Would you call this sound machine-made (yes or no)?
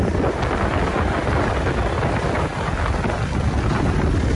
no